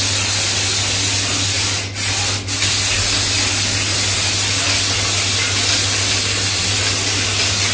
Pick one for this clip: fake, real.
real